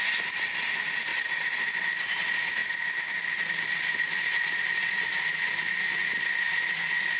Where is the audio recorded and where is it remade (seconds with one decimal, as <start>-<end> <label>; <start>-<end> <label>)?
0.0-7.2 recorded

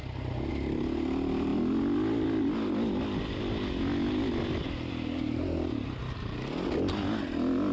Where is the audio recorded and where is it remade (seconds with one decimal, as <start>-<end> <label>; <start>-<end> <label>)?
0.0-7.7 recorded

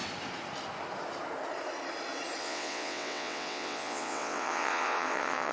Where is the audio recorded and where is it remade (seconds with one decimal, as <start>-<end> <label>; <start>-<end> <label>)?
0.0-2.4 recorded; 2.4-5.5 remade

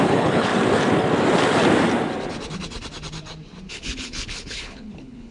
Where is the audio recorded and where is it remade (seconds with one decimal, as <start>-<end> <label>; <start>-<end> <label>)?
0.0-0.5 remade; 0.5-3.7 recorded; 3.7-5.3 remade

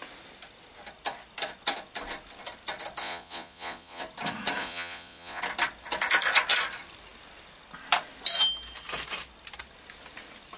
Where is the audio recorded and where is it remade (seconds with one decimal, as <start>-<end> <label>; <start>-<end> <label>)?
0.0-3.0 recorded; 3.0-4.0 remade; 4.0-4.6 recorded; 4.6-5.4 remade; 5.4-10.6 recorded

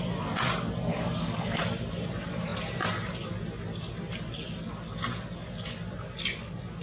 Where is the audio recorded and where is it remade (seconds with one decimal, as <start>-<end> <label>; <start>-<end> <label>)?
0.0-0.9 recorded; 0.9-1.6 remade; 1.6-6.8 recorded

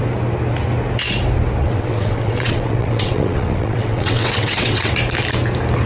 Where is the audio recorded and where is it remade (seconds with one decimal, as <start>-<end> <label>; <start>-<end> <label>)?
0.0-1.6 recorded; 1.6-4.9 remade; 4.9-5.9 recorded

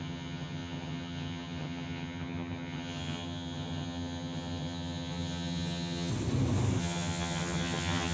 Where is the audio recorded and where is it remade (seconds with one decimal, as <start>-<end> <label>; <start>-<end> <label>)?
0.0-6.1 remade; 6.1-6.8 recorded; 6.8-8.1 remade